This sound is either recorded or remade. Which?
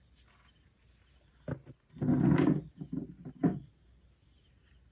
recorded